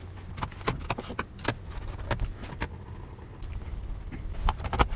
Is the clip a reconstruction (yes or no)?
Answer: no